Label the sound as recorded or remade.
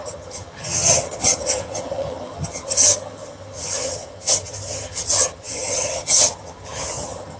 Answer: remade